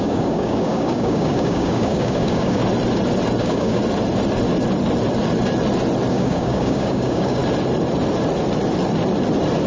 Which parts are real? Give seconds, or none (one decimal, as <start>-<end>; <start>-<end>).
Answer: 2.6-3.4; 3.8-6.1; 7.4-9.7